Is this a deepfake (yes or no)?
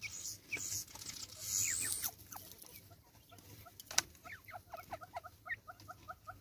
no